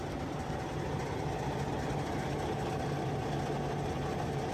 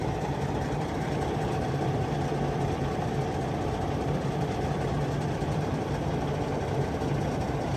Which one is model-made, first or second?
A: second